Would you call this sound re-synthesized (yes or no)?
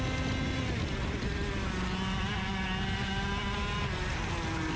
no